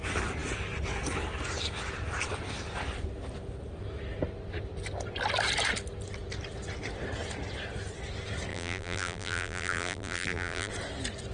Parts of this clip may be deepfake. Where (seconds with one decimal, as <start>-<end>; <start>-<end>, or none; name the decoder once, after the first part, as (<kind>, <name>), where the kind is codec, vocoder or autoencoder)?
8.5-10.7 (vocoder, BigVGAN v2)